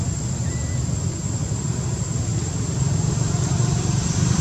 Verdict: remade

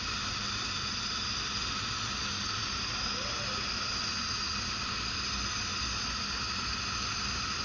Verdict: recorded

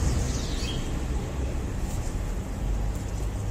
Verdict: recorded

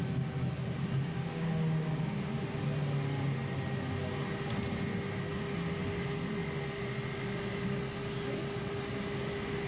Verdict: recorded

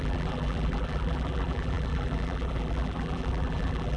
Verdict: remade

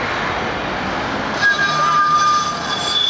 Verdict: recorded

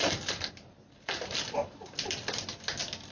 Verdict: recorded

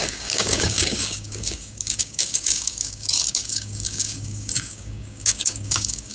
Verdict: remade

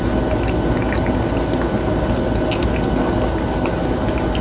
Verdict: recorded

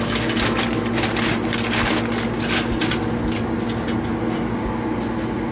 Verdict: recorded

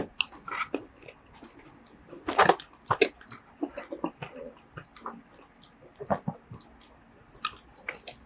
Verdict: recorded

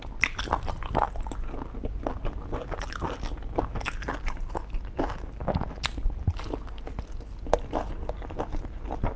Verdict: recorded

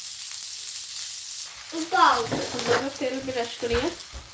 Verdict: recorded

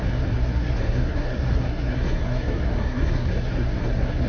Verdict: remade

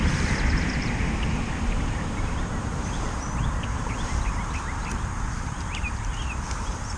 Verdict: remade